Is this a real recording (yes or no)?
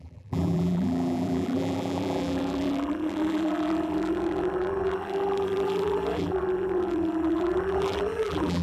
no